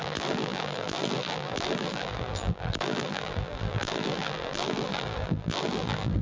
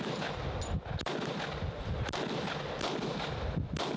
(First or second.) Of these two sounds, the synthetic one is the first